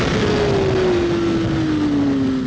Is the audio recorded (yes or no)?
yes